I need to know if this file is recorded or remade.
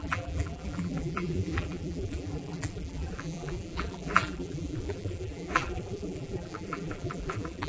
remade